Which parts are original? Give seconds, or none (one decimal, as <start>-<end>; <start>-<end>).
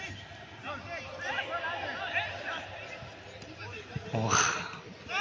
0.0-5.2